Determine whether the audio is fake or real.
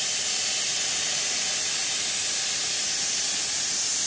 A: real